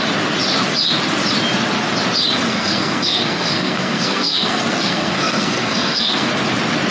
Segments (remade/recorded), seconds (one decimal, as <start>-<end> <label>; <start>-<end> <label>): 0.0-2.5 recorded; 2.5-6.3 remade; 6.3-6.9 recorded